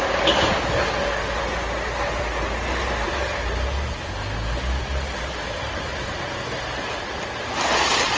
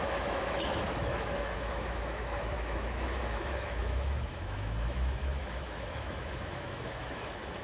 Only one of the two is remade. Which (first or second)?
second